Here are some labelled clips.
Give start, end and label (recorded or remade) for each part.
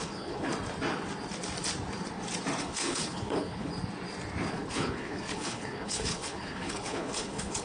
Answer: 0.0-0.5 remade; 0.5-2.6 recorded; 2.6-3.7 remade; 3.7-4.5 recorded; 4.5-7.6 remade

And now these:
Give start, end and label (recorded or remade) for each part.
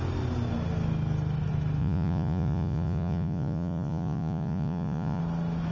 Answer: 0.0-1.8 recorded; 1.8-5.2 remade; 5.2-5.7 recorded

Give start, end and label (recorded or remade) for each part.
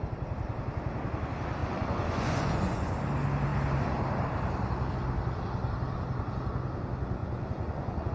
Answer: 0.0-1.6 recorded; 1.6-3.0 remade; 3.0-7.2 recorded; 7.2-8.1 remade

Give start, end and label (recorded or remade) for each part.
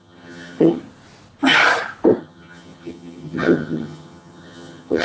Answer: 0.0-0.8 remade; 0.8-2.2 recorded; 2.2-5.0 remade